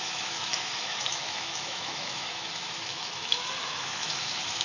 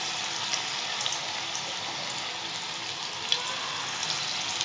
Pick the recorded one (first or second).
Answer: second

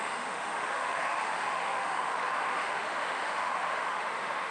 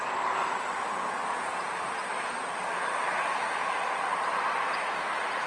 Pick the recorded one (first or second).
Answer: second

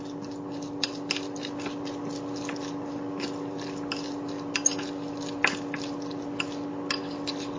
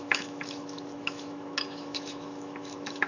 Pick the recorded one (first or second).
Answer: first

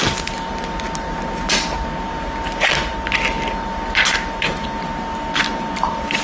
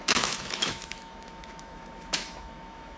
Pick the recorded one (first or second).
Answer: first